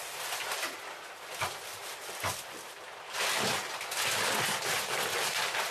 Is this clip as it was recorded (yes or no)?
yes